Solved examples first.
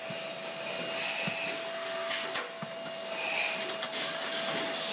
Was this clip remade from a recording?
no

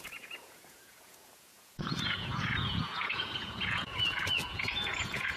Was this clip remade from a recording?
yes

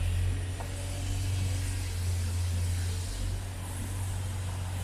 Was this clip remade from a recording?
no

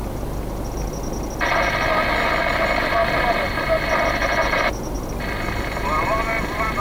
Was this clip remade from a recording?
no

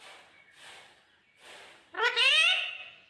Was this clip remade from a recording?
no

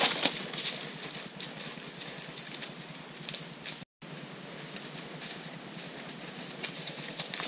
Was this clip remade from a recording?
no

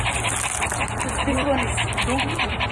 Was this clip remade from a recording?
no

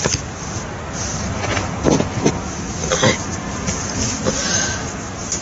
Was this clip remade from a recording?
no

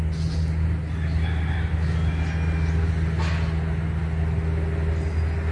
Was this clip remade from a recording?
no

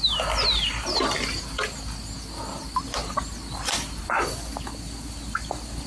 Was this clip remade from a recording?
no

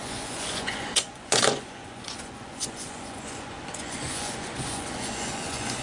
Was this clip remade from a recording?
yes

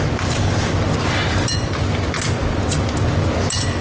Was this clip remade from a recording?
no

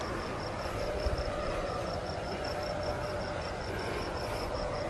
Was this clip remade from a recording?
yes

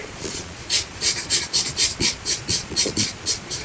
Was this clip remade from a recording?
yes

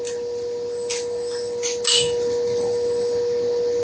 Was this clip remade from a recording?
no